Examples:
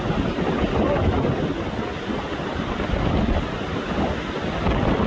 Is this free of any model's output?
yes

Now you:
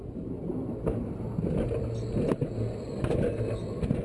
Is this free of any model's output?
yes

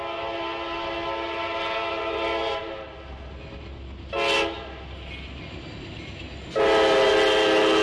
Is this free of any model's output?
yes